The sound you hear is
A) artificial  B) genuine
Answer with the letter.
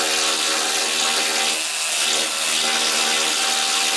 B